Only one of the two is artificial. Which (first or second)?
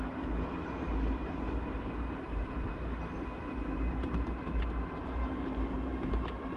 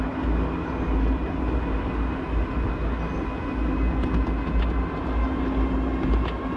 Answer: first